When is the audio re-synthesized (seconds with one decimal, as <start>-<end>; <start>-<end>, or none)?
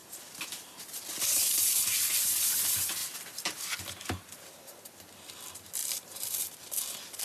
5.8-7.2